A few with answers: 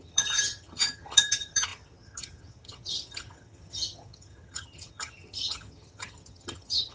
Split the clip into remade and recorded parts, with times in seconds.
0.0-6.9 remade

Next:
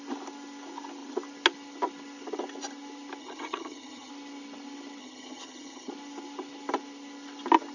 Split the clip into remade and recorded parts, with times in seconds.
0.0-3.2 recorded; 3.2-4.1 remade; 4.1-5.0 recorded; 5.0-5.9 remade; 5.9-7.7 recorded

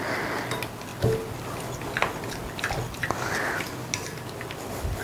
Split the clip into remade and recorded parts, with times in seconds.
0.0-5.0 recorded

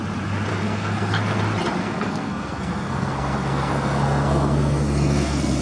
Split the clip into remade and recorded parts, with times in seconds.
0.0-0.5 recorded; 0.5-1.4 remade; 1.4-1.8 recorded; 1.8-5.6 remade

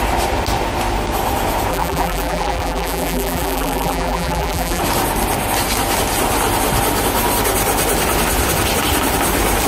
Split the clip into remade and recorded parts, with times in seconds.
0.0-1.7 recorded; 1.7-4.8 remade; 4.8-9.7 recorded

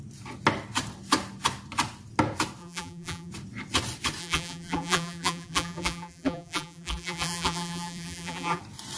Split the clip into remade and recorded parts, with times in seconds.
0.0-2.6 recorded; 2.6-3.3 remade; 3.3-4.2 recorded; 4.2-8.6 remade; 8.6-9.0 recorded

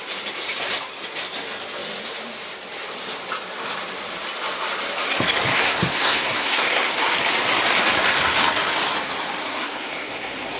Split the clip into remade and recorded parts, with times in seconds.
0.0-5.5 recorded; 5.5-6.9 remade; 6.9-9.4 recorded; 9.4-10.6 remade